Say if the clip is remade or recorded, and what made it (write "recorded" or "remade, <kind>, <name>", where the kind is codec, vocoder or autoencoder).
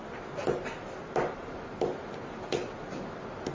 recorded